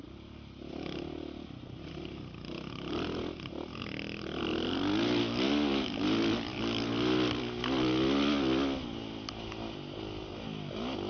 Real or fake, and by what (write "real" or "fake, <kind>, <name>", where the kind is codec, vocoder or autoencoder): real